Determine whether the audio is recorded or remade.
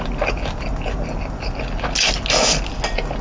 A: recorded